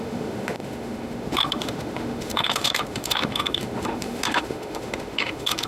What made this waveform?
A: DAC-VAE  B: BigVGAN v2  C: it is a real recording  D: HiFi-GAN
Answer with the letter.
A